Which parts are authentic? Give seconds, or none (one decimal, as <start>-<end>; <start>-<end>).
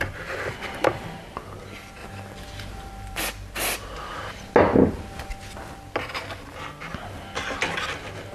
0.0-2.0; 3.2-8.3